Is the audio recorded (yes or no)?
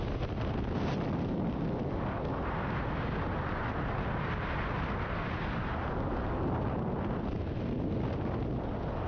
yes